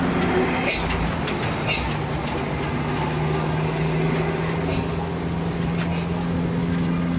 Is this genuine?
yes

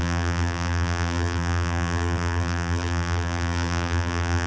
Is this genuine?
no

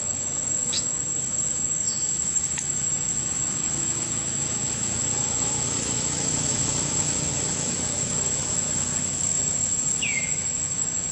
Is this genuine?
no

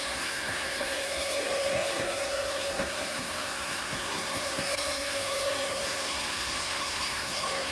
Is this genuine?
no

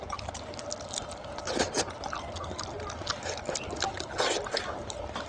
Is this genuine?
yes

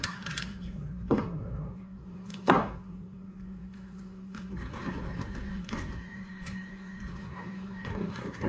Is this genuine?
no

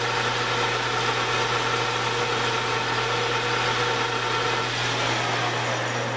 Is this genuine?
yes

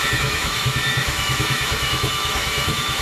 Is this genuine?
no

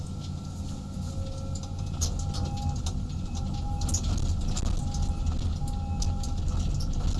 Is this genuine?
yes